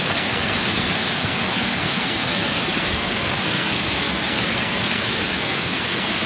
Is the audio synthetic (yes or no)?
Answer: yes